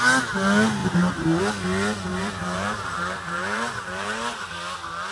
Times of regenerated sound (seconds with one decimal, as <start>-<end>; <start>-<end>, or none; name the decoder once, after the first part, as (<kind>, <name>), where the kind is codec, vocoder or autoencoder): 0.8-1.4 (vocoder, BigVGAN v2); 2.1-4.4